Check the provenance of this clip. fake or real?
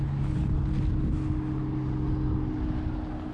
real